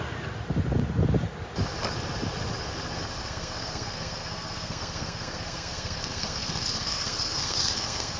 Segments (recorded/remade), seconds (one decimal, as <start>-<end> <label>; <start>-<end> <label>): 0.0-3.2 recorded; 3.2-8.2 remade